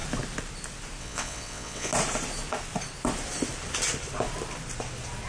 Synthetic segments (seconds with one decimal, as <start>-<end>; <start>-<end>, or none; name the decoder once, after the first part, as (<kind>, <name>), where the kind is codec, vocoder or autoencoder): 1.0-1.9 (vocoder, WaveNeXt)